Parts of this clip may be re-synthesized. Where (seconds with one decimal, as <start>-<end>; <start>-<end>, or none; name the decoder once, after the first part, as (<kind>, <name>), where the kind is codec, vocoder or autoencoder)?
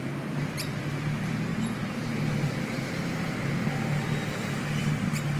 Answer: 1.5-4.6 (vocoder, BigVGAN v2)